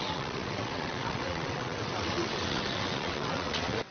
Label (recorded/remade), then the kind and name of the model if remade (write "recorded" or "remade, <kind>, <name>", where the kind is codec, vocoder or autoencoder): remade, vocoder, WaveNeXt